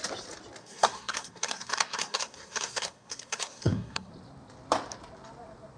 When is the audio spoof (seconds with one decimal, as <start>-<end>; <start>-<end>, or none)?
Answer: 0.6-4.1